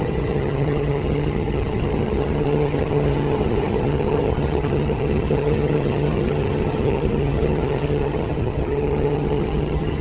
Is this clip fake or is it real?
fake